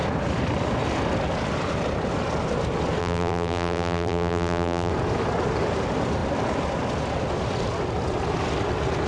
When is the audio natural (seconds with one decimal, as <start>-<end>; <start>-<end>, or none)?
0.0-3.0; 4.9-9.1